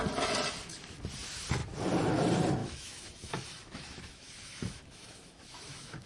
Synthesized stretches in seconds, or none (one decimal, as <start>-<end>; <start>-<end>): 2.6-6.1

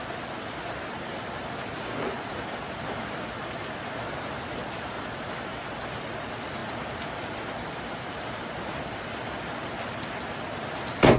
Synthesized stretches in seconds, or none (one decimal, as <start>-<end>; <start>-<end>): none

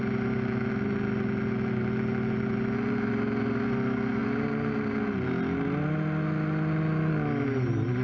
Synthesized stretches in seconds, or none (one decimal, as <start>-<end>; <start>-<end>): none

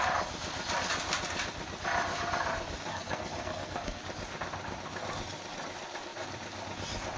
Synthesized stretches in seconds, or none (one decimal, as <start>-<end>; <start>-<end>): 2.9-4.0